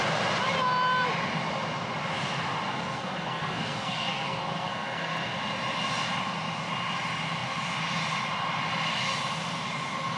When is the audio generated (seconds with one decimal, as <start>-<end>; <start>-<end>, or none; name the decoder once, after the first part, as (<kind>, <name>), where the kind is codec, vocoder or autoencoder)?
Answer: 2.7-5.3 (codec, SNAC)